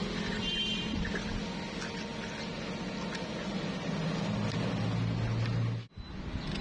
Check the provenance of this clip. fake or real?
real